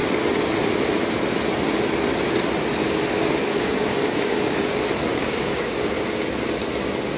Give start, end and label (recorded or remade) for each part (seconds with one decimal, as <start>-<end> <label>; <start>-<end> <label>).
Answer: 0.0-2.8 recorded; 2.8-4.6 remade; 4.6-5.1 recorded; 5.1-5.9 remade; 5.9-7.2 recorded